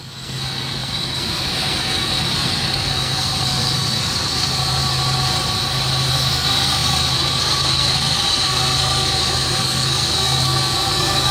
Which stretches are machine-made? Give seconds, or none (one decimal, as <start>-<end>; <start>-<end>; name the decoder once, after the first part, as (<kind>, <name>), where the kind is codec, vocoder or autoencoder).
0.0-4.8 (codec, SNAC); 6.1-11.3